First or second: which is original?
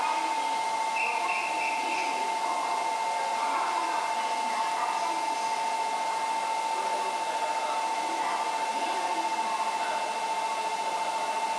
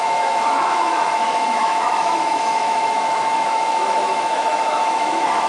first